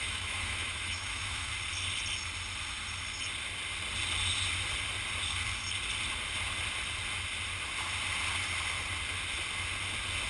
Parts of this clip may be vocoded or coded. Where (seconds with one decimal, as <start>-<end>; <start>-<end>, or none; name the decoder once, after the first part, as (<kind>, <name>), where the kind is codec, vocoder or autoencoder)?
0.0-1.5 (autoencoder, DAC-VAE)